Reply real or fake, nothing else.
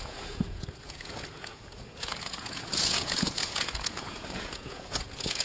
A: fake